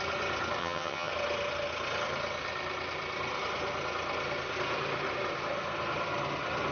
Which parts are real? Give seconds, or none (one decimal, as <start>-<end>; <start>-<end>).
0.0-0.6; 1.1-6.7